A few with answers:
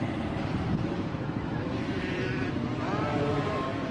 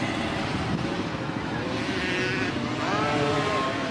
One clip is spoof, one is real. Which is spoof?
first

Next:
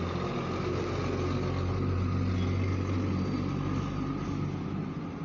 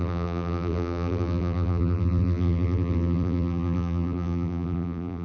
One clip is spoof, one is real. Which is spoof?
second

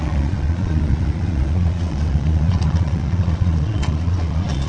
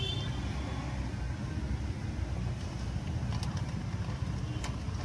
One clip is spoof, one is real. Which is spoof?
first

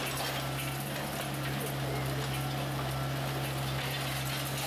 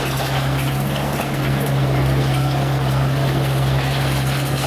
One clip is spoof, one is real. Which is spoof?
second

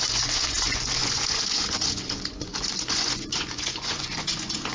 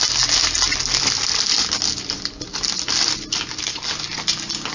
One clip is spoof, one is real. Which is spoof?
first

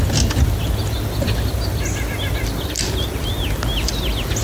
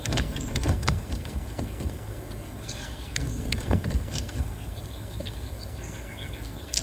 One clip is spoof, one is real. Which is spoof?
second